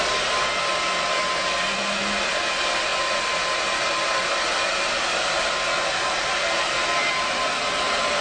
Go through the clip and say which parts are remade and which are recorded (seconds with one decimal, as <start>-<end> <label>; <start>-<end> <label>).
0.0-8.2 recorded